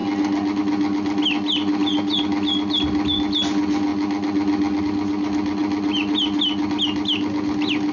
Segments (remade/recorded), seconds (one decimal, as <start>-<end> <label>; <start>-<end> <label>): 0.0-7.9 recorded